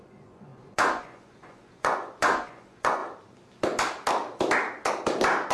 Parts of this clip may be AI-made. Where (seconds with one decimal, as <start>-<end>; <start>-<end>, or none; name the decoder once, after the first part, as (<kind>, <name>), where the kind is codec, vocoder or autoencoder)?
0.0-3.0 (vocoder, Vocos)